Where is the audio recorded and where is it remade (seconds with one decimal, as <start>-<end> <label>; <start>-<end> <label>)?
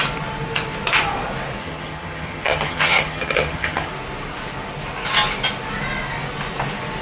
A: 0.0-1.6 recorded; 1.6-3.9 remade; 3.9-7.0 recorded